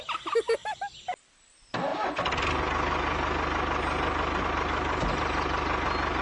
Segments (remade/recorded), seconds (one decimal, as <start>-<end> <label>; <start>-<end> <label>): 0.0-6.2 recorded